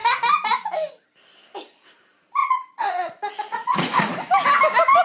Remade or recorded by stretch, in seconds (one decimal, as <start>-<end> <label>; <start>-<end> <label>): 0.0-2.4 recorded; 2.4-4.1 remade; 4.1-5.0 recorded